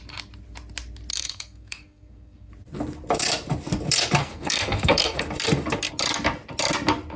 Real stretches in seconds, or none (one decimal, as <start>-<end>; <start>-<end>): 0.0-1.1; 2.5-4.2; 5.2-7.2